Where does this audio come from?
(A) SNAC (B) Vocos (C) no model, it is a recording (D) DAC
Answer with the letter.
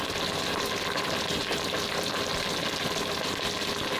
C